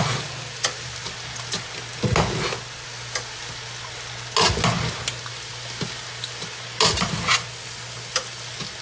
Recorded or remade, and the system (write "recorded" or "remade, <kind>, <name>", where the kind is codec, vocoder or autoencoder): recorded